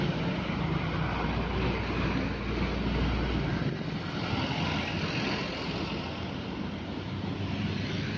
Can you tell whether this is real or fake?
real